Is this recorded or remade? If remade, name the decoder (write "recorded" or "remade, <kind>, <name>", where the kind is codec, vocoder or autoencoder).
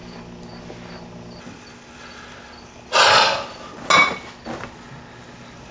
recorded